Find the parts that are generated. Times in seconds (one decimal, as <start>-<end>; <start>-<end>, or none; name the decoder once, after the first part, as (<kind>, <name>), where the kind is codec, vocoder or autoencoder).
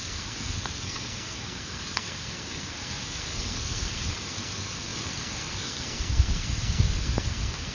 0.0-7.7 (codec, SNAC)